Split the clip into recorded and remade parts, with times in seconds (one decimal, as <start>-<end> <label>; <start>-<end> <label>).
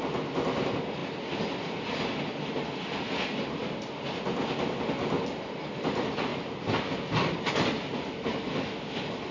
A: 0.0-9.3 recorded